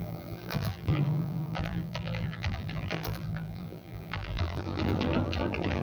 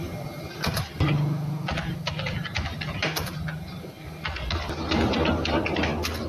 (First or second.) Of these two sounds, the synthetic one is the first